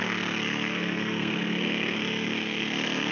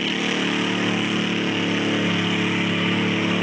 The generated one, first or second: first